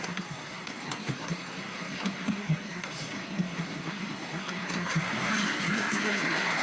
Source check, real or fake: fake